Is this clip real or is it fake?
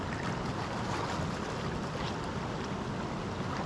real